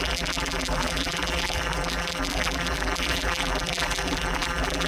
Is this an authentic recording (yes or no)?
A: no